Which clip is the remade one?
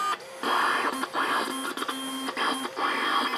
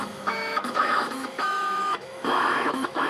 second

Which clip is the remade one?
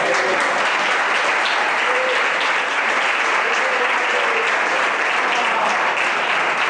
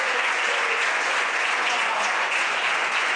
second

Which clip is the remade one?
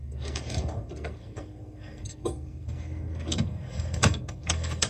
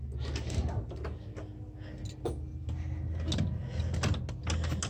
first